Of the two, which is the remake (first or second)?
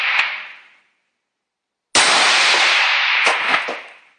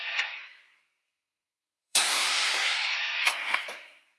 second